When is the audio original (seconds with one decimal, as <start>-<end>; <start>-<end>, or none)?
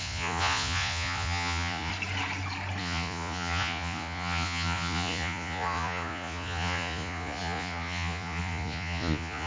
1.9-2.8